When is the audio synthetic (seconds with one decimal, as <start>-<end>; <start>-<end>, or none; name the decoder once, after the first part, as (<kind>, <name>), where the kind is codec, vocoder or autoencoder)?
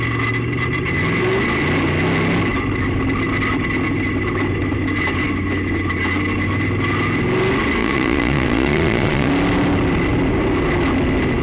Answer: 7.8-9.3 (vocoder, Vocos)